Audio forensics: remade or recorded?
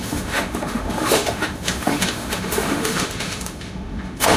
remade